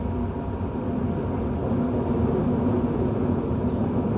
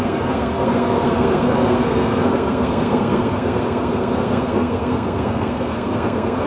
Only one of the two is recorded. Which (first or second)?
first